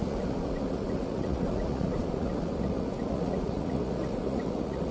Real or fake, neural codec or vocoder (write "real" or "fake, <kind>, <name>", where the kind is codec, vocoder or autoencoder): fake, vocoder, Vocos